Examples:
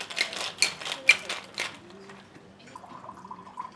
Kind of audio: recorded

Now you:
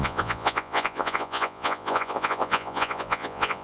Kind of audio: remade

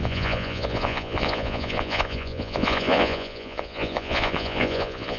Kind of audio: remade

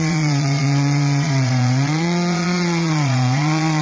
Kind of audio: remade